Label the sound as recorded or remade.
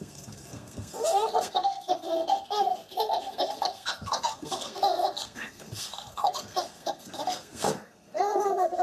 remade